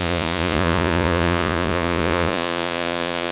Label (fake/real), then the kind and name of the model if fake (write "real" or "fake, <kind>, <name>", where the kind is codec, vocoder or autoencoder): fake, vocoder, Vocos